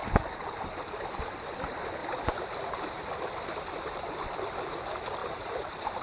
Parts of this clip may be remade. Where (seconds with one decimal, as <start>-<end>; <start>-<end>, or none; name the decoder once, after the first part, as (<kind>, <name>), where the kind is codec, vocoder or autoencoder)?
0.0-1.2 (vocoder, BigVGAN v2); 2.0-4.2; 5.2-6.0